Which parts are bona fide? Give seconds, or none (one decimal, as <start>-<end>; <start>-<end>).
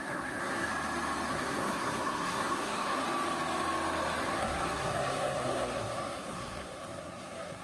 0.7-1.3; 3.0-4.2